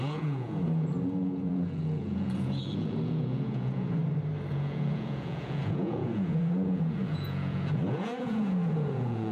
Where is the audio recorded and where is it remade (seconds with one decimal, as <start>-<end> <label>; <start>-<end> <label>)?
0.0-4.0 remade; 4.0-4.5 recorded; 4.5-9.3 remade